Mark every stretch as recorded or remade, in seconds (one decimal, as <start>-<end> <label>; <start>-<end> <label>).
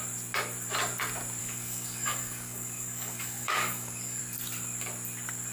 0.0-1.4 recorded; 1.4-4.2 remade; 4.2-5.5 recorded